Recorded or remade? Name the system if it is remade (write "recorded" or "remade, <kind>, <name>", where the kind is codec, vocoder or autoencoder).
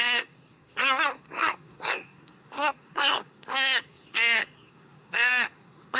remade, codec, SNAC